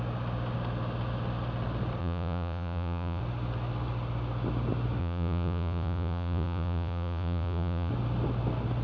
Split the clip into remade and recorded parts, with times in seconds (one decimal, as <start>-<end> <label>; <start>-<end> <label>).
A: 0.0-2.0 recorded; 2.0-3.2 remade; 3.2-5.0 recorded; 5.0-7.9 remade; 7.9-8.8 recorded